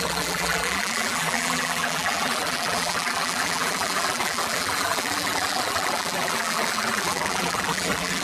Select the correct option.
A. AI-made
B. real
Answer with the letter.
A